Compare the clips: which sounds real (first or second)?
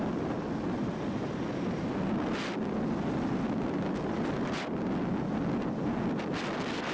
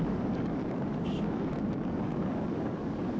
first